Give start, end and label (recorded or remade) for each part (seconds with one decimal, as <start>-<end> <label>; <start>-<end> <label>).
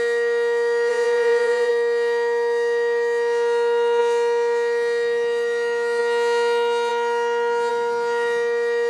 0.0-0.9 recorded; 0.9-1.7 remade; 1.7-8.9 recorded